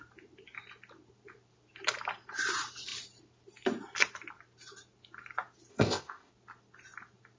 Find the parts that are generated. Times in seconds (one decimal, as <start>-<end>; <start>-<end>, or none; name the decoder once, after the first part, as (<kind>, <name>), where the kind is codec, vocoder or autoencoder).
5.7-6.3 (codec, ZipCodec)